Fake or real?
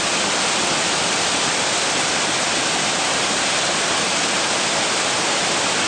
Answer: real